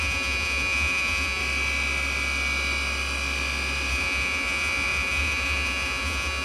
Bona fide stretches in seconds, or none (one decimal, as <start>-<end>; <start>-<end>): 1.4-3.9